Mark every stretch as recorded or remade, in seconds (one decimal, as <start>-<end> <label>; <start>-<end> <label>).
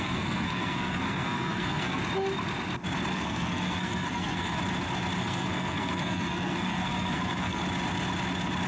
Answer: 0.0-2.0 remade; 2.0-3.1 recorded; 3.1-4.6 remade; 4.6-5.2 recorded; 5.2-7.6 remade; 7.6-8.7 recorded